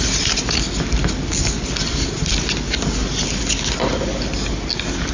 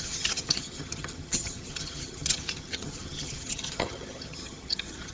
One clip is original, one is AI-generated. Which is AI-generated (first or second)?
second